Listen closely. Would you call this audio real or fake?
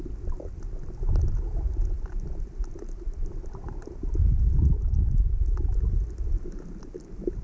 real